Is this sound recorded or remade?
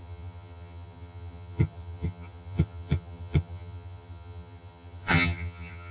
remade